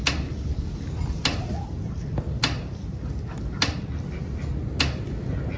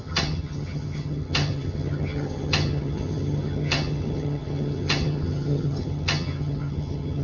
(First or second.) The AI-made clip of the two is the second